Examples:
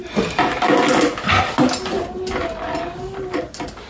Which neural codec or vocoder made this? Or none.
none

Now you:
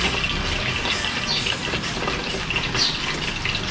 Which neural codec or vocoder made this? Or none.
none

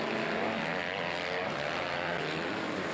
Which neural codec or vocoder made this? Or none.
none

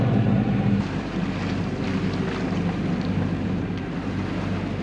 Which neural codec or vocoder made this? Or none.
none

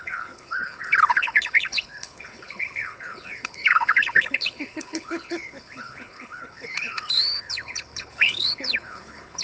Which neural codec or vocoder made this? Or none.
codec, HILCodec